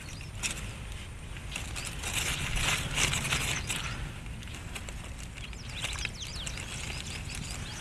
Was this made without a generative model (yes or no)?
yes